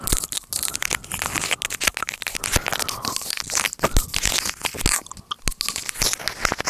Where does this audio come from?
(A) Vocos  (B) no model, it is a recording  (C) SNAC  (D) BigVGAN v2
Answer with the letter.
B